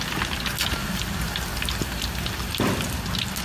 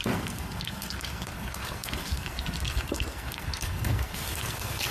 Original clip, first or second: first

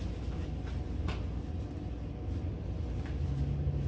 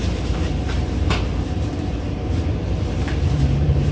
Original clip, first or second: first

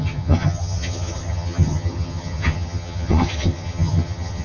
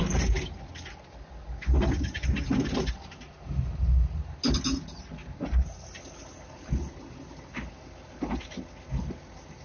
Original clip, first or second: second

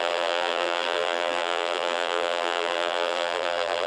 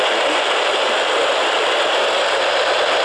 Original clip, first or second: second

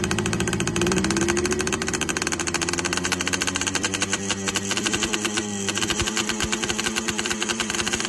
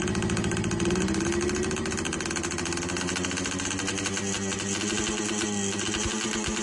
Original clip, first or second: second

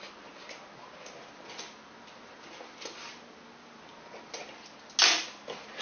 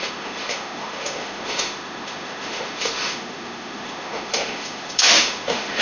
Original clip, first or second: first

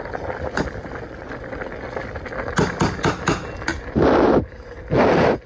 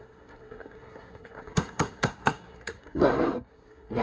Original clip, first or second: first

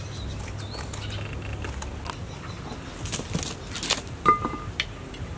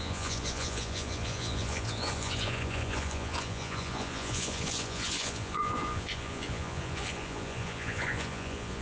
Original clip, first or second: first